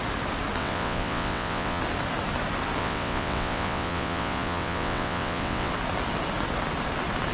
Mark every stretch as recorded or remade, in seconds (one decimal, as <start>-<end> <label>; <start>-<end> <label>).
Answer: 0.0-0.6 recorded; 0.6-1.8 remade; 1.8-2.8 recorded; 2.8-5.7 remade; 5.7-7.3 recorded